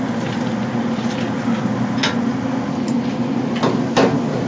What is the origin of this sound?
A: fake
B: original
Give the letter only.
B